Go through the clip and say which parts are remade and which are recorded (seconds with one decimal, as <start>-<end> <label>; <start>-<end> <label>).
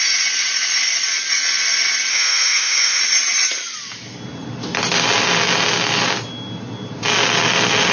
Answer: 0.0-2.1 recorded; 2.1-3.0 remade; 3.0-7.9 recorded